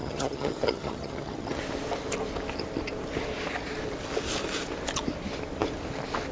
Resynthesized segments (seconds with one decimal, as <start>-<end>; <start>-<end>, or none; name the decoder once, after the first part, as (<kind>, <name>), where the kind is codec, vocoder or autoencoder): 0.0-1.6 (vocoder, HiFi-GAN)